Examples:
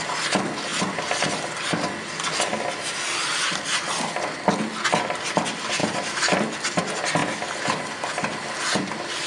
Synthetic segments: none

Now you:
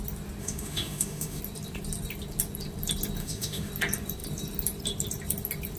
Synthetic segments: 0.4-1.4 (autoencoder, DAC-VAE); 3.2-3.7

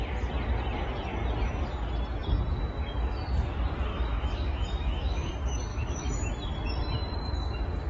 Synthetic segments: 3.9-5.3 (autoencoder, DAC-VAE); 5.7-6.3

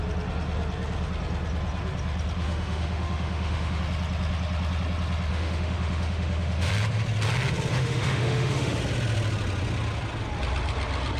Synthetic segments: 2.4-3.8 (autoencoder, DAC-VAE); 5.3-6.7; 7.7-8.8

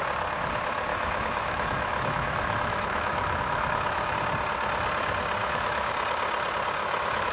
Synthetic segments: 0.9-4.1 (autoencoder, DAC-VAE); 5.4-5.9; 6.8-7.3

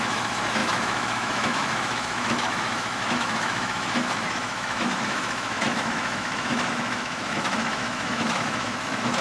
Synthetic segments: 0.0-9.2 (autoencoder, DAC-VAE)

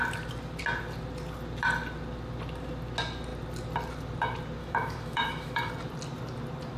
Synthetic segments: 4.6-5.7 (autoencoder, DAC-VAE)

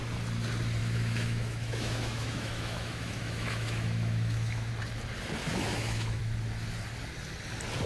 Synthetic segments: 0.8-4.7 (autoencoder, DAC-VAE); 5.4-6.2